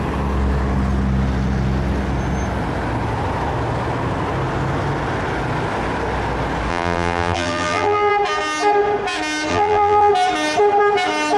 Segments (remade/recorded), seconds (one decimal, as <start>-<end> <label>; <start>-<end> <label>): 0.0-6.7 recorded; 6.7-8.1 remade; 8.1-9.5 recorded; 9.5-10.1 remade; 10.1-11.4 recorded